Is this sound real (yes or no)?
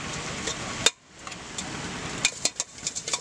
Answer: yes